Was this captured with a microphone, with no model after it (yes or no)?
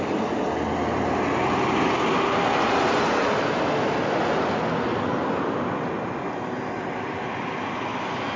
yes